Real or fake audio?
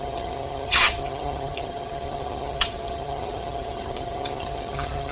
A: fake